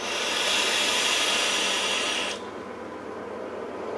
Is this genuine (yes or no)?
yes